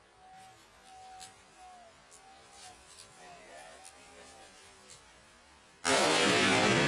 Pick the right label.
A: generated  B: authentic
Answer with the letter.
B